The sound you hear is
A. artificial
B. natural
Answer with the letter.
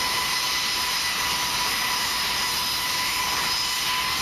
B